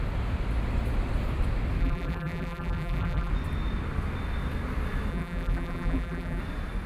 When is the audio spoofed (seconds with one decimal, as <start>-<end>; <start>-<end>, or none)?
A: 1.8-3.3; 5.1-6.4